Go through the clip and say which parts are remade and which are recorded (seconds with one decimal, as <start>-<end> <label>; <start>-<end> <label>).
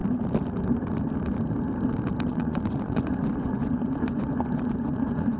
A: 0.0-2.3 recorded; 2.3-5.4 remade